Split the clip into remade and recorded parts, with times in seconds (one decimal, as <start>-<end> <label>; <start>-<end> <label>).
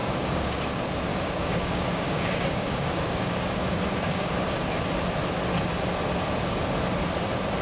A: 0.0-0.6 remade; 0.6-1.1 recorded; 1.1-4.3 remade; 4.3-7.6 recorded